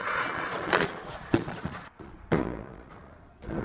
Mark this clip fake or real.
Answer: fake